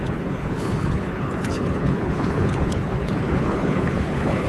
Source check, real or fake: fake